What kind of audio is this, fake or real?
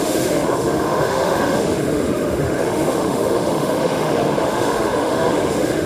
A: fake